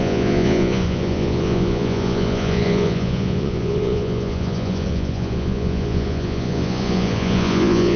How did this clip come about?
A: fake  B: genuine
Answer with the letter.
A